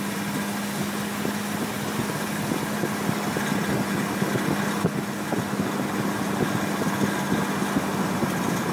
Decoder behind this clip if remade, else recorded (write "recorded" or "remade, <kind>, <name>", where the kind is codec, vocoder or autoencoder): recorded